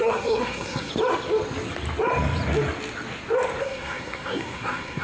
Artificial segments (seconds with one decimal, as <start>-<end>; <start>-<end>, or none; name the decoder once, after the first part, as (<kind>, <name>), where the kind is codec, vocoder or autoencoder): 0.0-0.9 (codec, SNAC); 3.6-5.0